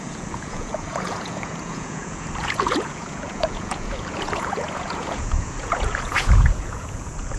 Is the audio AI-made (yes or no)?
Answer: yes